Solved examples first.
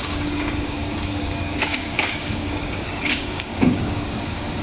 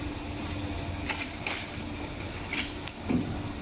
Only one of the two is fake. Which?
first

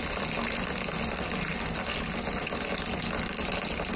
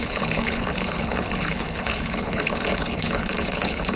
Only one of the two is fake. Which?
second